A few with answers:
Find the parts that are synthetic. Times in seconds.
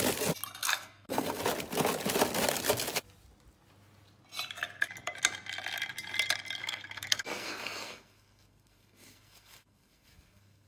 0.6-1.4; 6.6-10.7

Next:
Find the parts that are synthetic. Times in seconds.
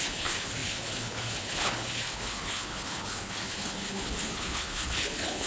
0.0-5.5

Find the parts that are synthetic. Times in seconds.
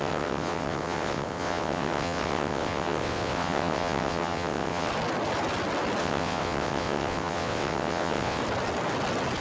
0.0-4.9; 6.0-8.4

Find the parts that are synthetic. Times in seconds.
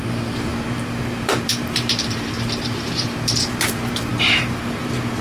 0.0-5.2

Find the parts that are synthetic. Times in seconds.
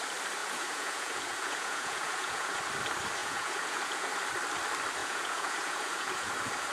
0.4-2.6; 3.2-4.1; 5.0-6.3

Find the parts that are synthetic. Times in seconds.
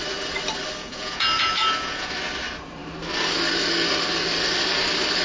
0.8-2.1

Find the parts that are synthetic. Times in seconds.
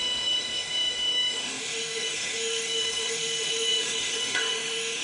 0.0-5.0